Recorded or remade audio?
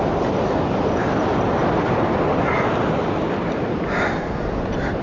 recorded